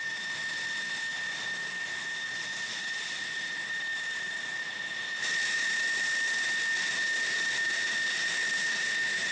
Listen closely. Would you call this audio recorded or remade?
recorded